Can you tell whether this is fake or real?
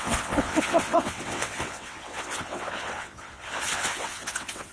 fake